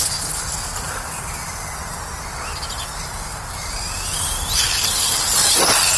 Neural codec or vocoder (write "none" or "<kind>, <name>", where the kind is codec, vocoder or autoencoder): none